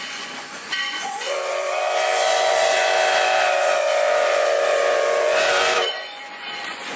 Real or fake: fake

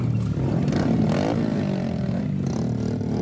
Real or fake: real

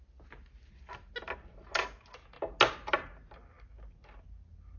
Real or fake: real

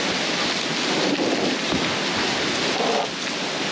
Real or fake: real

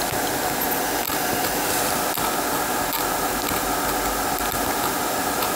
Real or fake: real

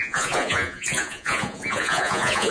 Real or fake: fake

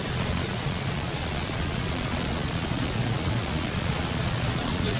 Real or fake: fake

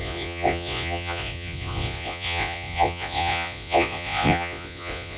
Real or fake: fake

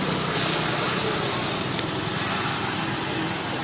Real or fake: real